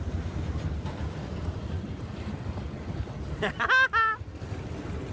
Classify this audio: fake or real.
real